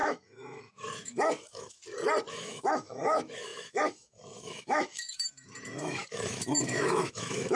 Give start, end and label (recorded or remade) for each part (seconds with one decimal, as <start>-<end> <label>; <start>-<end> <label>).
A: 0.0-1.8 remade; 1.8-2.3 recorded; 2.3-7.6 remade